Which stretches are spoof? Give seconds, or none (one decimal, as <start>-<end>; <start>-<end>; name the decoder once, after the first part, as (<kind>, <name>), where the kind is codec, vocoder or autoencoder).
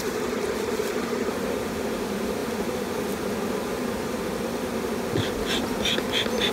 none